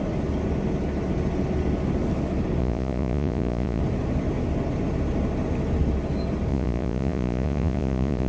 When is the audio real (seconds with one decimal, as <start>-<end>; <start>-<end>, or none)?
0.0-2.6; 3.8-6.5